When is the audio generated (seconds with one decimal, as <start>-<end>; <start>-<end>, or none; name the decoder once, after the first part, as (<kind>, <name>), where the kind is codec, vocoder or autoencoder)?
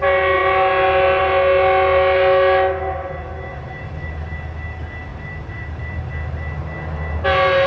3.5-4.1 (vocoder, BigVGAN v2); 5.1-6.1